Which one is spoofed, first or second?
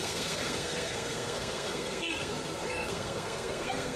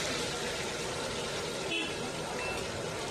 first